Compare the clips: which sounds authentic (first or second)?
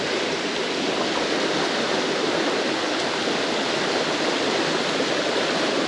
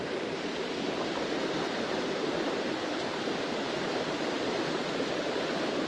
first